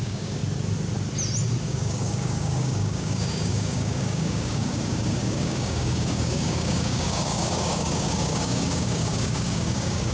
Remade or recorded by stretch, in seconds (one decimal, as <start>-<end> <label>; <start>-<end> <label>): 0.0-0.4 remade; 0.4-1.6 recorded; 1.6-10.1 remade